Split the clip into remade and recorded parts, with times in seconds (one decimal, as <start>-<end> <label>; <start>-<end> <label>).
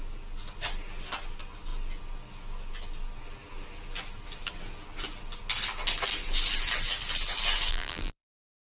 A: 0.0-7.7 recorded; 7.7-8.6 remade